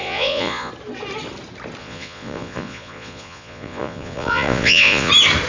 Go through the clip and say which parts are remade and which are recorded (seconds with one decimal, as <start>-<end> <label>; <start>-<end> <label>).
0.0-0.7 remade; 0.7-1.8 recorded; 1.8-5.1 remade; 5.1-5.5 recorded